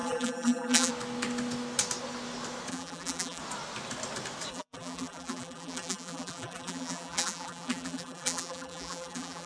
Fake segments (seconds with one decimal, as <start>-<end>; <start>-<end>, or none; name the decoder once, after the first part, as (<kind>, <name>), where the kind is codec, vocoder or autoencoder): 0.0-0.9 (vocoder, BigVGAN v2); 2.7-3.4; 4.5-9.5